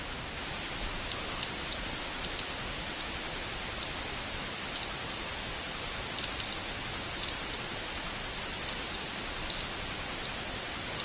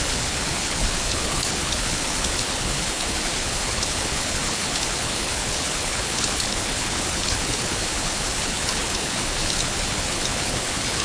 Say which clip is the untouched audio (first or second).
first